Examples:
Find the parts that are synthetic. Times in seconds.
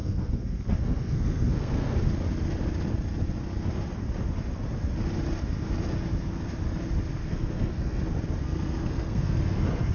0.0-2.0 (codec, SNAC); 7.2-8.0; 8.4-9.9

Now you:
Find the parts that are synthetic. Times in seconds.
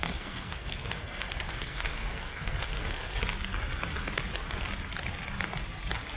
0.0-3.2 (codec, SNAC)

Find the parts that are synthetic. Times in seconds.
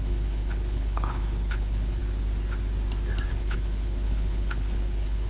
0.0-2.0 (codec, HILCodec); 3.3-5.3